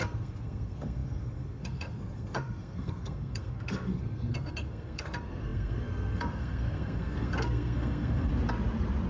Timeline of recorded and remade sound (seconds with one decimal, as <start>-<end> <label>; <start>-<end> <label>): 0.0-8.3 remade; 8.3-9.1 recorded